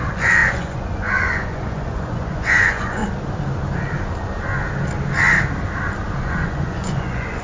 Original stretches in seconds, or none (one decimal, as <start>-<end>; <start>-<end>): 3.0-6.2